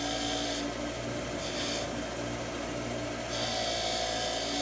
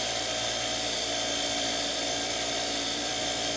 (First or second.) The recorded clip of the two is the first